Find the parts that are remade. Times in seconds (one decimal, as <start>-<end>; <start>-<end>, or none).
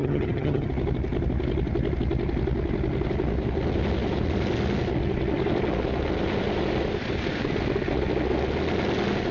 0.0-0.7